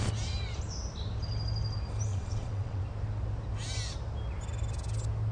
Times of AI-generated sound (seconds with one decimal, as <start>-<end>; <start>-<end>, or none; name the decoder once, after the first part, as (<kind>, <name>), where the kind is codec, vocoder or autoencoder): 2.1-2.8 (vocoder, WaveNeXt)